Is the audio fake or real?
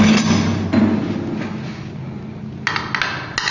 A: real